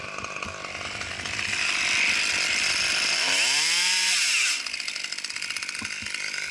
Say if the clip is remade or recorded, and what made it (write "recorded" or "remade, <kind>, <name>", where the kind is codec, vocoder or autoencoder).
recorded